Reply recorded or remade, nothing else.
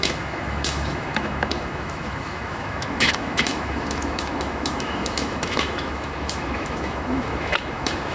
remade